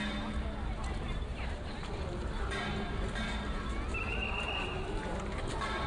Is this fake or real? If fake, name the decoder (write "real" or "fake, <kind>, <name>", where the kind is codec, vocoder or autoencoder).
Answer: fake, vocoder, BigVGAN v2